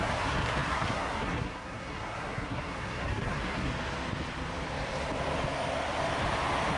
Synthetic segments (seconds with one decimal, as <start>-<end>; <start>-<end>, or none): 0.0-3.7